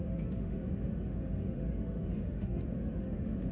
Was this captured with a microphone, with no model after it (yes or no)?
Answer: no